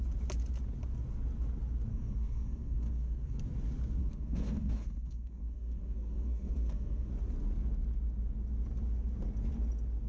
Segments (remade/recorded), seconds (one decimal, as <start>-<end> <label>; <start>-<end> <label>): 0.0-1.9 recorded; 1.9-3.4 remade; 3.4-4.0 recorded; 4.0-7.1 remade; 7.1-10.1 recorded